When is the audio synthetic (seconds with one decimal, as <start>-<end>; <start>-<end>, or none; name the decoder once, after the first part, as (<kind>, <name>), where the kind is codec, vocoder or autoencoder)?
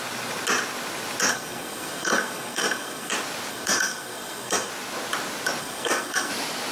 1.3-3.1 (codec, SNAC); 3.5-4.7; 5.6-6.3